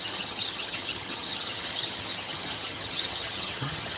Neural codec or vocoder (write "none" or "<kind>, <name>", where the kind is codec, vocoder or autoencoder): vocoder, HiFi-GAN